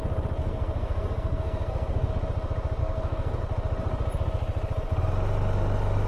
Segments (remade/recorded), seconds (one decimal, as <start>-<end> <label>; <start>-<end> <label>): 0.0-0.4 recorded; 0.4-2.1 remade; 2.1-2.8 recorded; 2.8-3.4 remade; 3.4-6.1 recorded